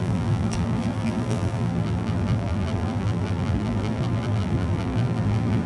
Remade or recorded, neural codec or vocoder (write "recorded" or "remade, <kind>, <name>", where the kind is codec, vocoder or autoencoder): remade, vocoder, BigVGAN v2